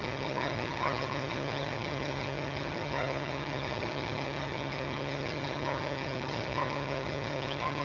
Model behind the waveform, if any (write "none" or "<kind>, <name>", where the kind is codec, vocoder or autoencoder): vocoder, HiFi-GAN